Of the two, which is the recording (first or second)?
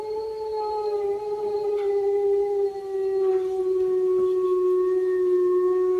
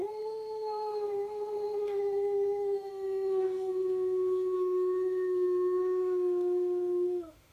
first